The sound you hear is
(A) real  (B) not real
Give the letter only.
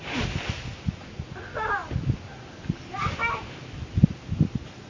A